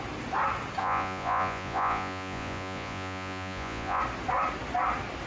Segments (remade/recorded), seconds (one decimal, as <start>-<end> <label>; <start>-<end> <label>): 0.0-0.8 recorded; 0.8-4.0 remade; 4.0-5.3 recorded